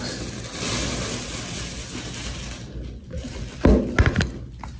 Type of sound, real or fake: real